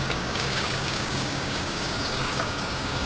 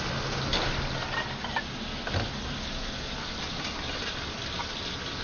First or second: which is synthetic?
first